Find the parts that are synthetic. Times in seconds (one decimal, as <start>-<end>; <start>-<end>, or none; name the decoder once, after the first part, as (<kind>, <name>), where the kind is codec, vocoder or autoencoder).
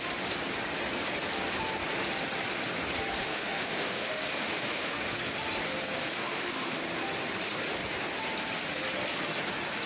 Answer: 3.2-5.0 (autoencoder, DAC-VAE); 6.1-6.8